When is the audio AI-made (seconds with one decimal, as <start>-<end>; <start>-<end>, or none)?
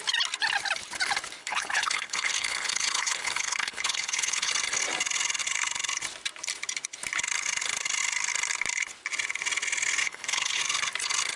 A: 1.4-4.5; 10.0-10.6